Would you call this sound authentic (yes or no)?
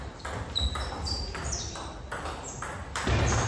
yes